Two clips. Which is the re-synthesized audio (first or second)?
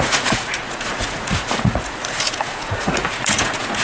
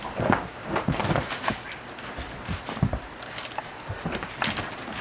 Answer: first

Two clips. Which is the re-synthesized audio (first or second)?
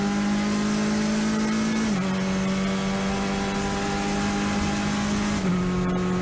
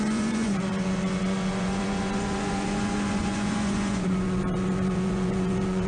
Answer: second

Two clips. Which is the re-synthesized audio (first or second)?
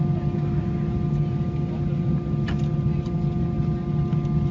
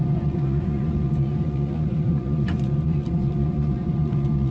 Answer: second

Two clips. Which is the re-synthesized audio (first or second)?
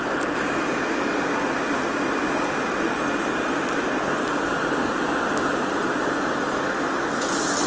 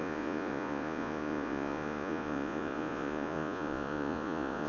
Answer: second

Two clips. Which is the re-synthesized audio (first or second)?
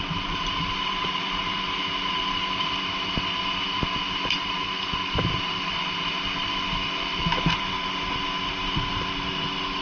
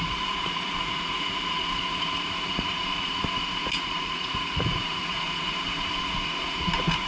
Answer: second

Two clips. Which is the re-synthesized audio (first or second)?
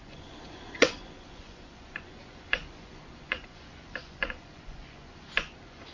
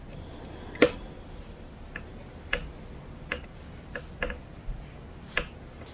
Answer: first